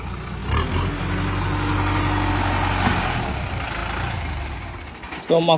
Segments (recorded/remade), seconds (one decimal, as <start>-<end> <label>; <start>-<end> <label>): 0.0-5.6 recorded